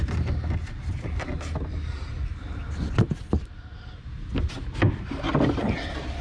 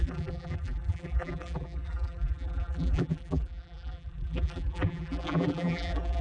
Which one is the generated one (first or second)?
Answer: second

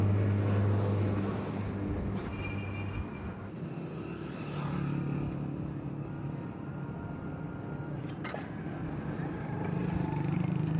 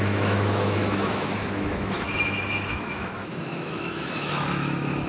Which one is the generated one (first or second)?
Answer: second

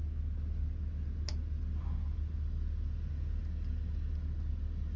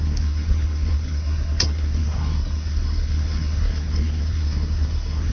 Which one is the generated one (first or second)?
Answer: second